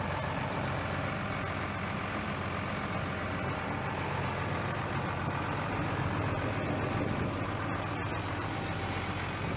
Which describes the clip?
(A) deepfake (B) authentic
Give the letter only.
B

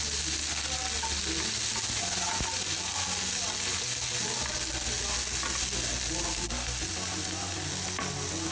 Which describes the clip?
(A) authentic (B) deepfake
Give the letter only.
A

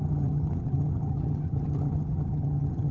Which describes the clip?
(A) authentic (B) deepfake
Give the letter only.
B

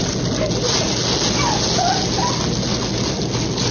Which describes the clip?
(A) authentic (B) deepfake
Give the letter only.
A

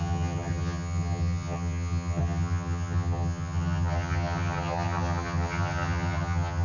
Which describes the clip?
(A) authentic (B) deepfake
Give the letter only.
B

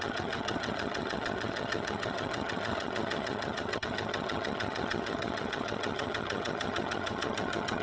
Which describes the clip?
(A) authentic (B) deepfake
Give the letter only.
B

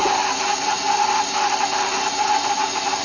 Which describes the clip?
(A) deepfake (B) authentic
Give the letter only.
B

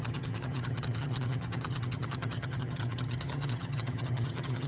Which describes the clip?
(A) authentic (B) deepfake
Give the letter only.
B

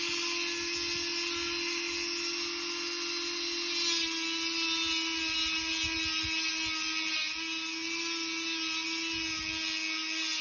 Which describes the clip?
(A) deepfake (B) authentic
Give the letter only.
B